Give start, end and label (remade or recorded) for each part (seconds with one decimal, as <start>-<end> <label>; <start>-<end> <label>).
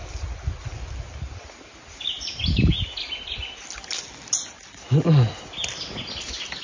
0.0-1.2 recorded; 1.2-2.7 remade; 2.7-6.6 recorded